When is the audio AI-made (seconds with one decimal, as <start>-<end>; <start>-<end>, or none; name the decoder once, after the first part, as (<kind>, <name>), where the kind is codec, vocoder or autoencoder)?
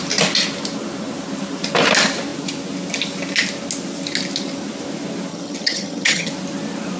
5.3-6.3 (vocoder, HiFi-GAN)